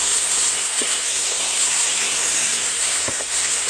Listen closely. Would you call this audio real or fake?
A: fake